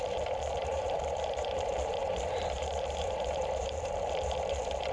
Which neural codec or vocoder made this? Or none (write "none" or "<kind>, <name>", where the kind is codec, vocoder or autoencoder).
vocoder, BigVGAN v2